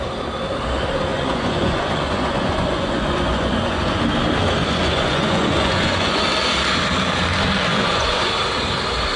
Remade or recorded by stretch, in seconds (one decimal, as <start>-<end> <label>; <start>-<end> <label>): 0.0-1.1 recorded; 1.1-4.0 remade; 4.0-4.6 recorded; 4.6-6.2 remade; 6.2-7.7 recorded; 7.7-8.3 remade; 8.3-9.2 recorded